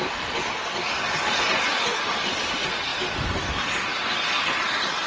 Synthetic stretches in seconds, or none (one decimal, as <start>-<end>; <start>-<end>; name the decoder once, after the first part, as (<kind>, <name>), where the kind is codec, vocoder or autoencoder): none